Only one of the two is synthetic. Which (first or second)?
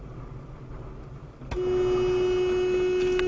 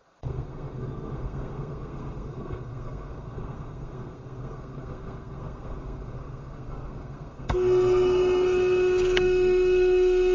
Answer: second